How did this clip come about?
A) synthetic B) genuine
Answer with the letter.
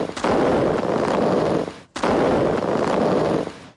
B